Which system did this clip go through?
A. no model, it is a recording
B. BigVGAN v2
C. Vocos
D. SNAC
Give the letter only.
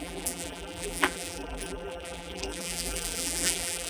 B